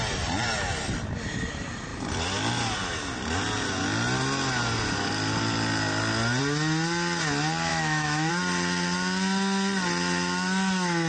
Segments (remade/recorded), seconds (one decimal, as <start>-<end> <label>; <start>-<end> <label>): 0.0-7.7 recorded; 7.7-8.3 remade; 8.3-11.1 recorded